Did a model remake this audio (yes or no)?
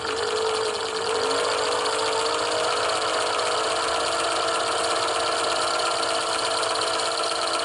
no